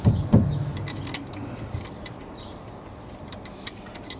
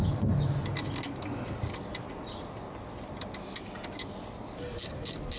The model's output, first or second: first